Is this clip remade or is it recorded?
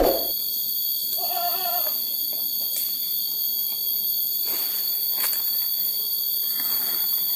remade